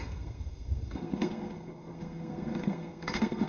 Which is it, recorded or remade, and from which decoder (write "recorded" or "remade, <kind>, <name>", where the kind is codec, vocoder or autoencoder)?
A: remade, codec, SNAC